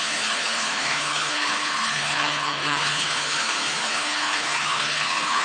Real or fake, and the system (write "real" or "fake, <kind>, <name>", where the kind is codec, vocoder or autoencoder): fake, codec, HILCodec